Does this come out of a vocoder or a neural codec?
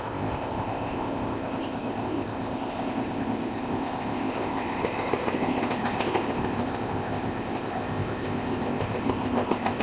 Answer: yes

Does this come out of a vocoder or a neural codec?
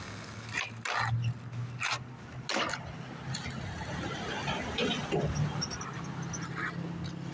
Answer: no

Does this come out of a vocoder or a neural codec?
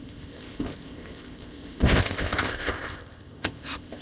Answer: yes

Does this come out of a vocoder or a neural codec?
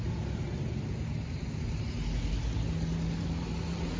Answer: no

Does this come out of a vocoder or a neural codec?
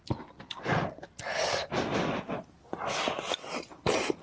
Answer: no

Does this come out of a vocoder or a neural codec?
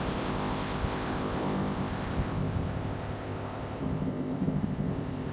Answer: yes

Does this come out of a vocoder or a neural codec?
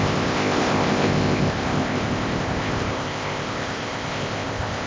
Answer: yes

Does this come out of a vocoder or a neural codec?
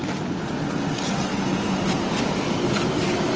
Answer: no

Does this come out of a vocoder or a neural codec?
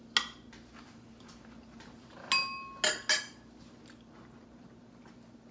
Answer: no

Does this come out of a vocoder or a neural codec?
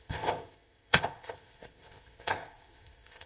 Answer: yes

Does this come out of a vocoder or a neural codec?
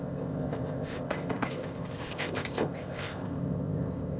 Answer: yes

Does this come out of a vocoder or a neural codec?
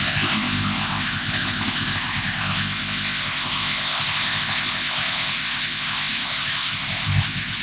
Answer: yes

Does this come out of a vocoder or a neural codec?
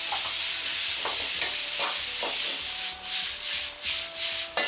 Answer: no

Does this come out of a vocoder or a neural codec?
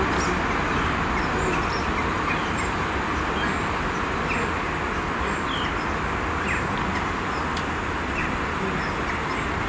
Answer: no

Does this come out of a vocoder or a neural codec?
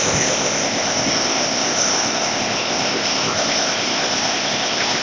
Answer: yes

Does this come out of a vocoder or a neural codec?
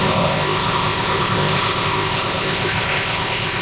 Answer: yes